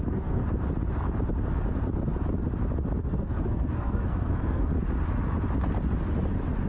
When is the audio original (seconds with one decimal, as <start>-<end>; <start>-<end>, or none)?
0.4-3.0; 4.7-6.7